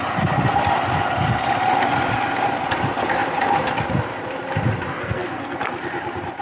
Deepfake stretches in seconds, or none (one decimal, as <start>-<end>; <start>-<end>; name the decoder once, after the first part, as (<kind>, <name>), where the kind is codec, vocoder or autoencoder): 4.9-5.6 (codec, SNAC)